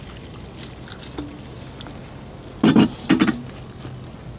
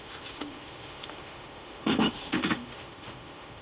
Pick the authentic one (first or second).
first